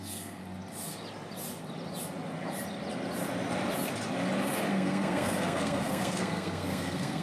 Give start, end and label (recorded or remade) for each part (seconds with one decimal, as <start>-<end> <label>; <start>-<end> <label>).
0.0-0.4 remade; 0.4-4.7 recorded; 4.7-7.2 remade